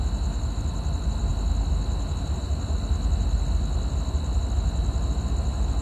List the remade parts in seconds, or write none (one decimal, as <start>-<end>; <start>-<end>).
none